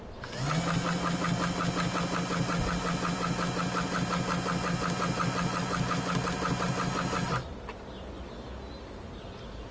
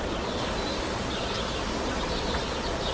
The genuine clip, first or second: first